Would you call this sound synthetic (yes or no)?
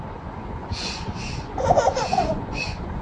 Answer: yes